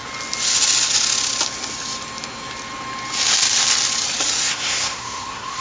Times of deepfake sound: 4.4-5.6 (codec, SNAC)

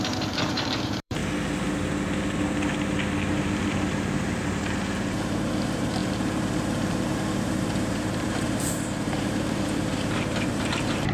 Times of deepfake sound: 0.0-1.2 (vocoder, BigVGAN v2); 3.3-11.1

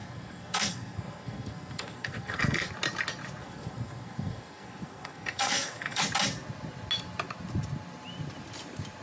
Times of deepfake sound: 0.0-2.7 (codec, SNAC); 3.4-6.0

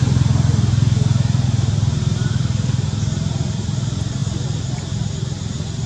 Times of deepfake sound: none

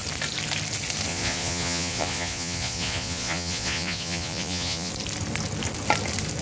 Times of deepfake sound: 1.1-4.9 (vocoder, Vocos)